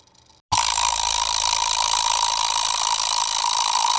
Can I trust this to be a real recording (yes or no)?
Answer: yes